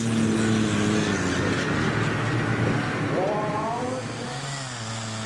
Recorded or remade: recorded